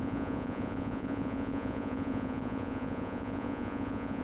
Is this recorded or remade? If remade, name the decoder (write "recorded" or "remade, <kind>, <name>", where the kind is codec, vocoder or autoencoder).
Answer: remade, vocoder, Vocos